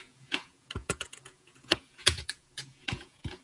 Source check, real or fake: fake